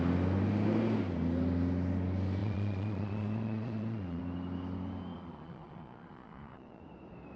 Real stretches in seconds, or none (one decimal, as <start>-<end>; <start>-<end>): 0.0-2.4; 4.2-5.1; 6.8-7.4